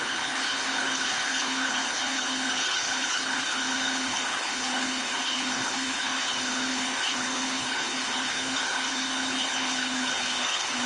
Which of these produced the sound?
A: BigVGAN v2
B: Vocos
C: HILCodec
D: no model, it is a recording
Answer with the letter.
C